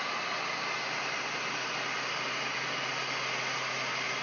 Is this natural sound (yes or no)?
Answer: yes